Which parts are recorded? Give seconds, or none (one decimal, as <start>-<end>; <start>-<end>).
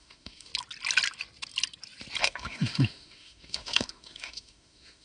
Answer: 0.5-2.2